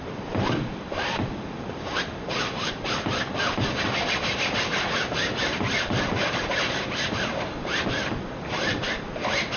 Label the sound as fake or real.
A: fake